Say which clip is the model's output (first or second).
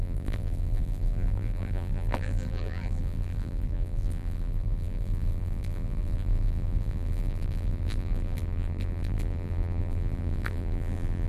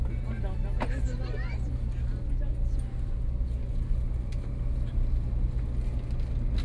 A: first